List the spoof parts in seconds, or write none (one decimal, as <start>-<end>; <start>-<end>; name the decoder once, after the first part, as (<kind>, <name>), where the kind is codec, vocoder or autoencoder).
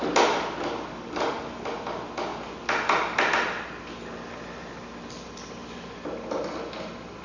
0.9-1.4 (codec, DAC)